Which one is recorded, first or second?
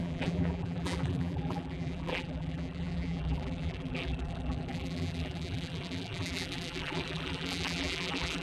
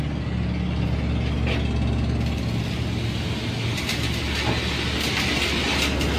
second